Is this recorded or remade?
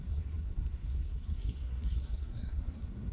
remade